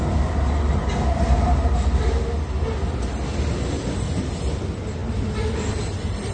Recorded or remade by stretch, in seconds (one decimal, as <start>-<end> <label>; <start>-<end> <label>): 0.0-6.3 recorded